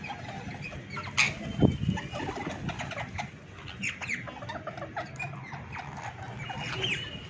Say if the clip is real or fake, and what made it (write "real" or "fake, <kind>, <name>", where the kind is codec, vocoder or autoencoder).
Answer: real